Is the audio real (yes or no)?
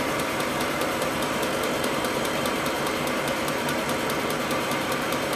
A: no